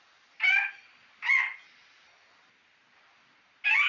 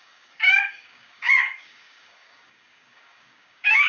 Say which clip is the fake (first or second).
second